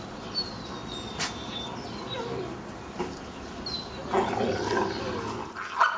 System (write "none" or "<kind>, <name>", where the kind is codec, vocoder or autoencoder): none